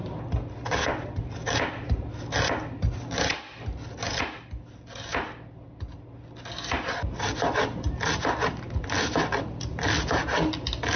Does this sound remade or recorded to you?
recorded